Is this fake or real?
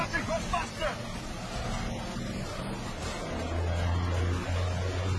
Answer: real